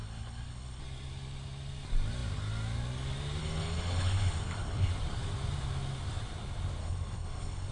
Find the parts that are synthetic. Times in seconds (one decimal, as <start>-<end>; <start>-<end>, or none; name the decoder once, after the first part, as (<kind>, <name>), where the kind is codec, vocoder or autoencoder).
0.0-0.8 (codec, HILCodec); 3.4-4.9; 6.8-7.7